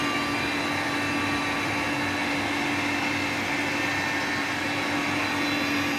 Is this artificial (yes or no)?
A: no